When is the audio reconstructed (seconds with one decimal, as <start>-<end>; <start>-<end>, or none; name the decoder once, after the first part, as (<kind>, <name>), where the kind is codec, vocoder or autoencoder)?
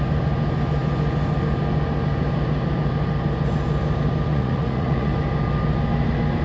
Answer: 4.3-5.1 (vocoder, Vocos)